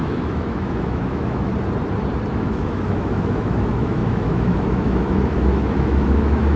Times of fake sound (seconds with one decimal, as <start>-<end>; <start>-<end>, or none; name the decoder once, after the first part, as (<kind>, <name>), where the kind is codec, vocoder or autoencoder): 0.0-1.5 (autoencoder, DAC-VAE); 2.3-6.6